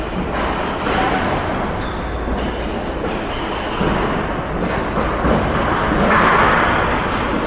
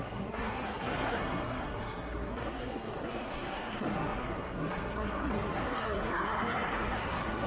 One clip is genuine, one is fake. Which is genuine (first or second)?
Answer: first